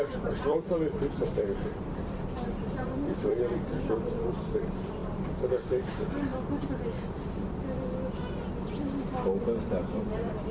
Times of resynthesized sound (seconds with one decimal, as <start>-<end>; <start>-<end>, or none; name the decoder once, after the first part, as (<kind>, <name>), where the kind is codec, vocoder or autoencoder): 0.0-5.0 (vocoder, BigVGAN v2); 5.8-6.3; 10.1-10.5